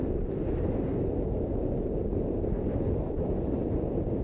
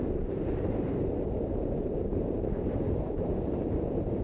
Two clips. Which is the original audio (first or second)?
first